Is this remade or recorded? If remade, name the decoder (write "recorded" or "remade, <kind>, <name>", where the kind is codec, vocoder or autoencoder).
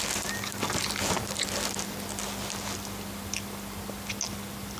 recorded